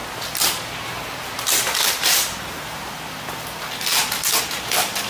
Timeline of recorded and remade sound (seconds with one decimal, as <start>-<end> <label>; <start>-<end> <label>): 0.0-2.8 remade; 2.8-5.1 recorded

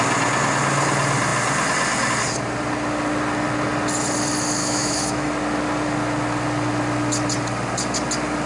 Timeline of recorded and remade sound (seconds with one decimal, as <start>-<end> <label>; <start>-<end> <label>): 0.0-4.6 recorded; 4.6-5.3 remade; 5.3-8.5 recorded

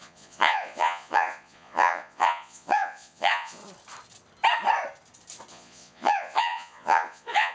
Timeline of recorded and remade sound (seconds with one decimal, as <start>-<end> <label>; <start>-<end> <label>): 0.0-3.6 remade; 3.6-5.5 recorded; 5.5-7.5 remade

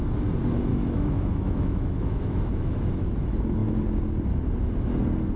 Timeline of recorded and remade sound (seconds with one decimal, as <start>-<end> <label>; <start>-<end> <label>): 0.0-0.7 recorded; 0.7-3.1 remade; 3.1-5.4 recorded

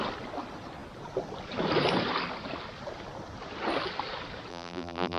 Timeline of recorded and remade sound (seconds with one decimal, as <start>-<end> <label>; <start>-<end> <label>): 0.0-4.5 recorded; 4.5-5.2 remade

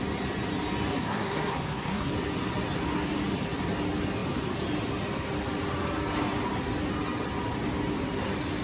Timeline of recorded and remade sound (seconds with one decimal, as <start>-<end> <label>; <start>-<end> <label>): 0.0-0.9 recorded; 0.9-2.1 remade; 2.1-8.6 recorded

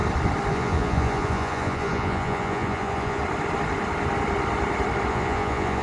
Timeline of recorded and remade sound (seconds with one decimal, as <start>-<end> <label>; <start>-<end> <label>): 0.0-0.5 recorded; 0.5-3.2 remade; 3.2-5.1 recorded; 5.1-5.8 remade